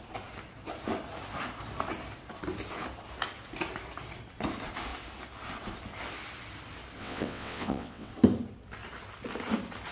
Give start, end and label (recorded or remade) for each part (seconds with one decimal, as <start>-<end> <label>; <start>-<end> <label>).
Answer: 0.0-7.0 recorded; 7.0-8.1 remade; 8.1-9.9 recorded